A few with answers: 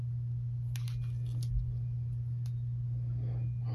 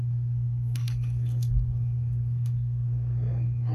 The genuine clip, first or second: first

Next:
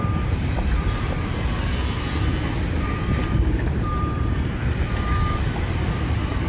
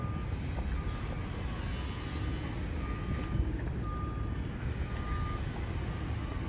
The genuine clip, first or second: second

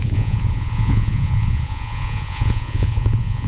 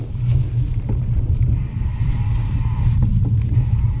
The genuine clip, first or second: second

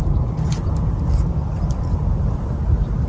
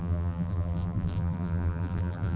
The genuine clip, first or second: first